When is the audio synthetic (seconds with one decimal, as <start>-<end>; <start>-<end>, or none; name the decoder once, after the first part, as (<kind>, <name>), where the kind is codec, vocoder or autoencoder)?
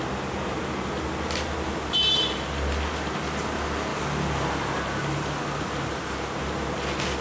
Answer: none